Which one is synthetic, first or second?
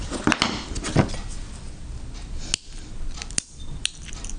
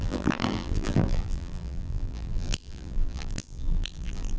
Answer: second